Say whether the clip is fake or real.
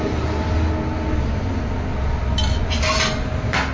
real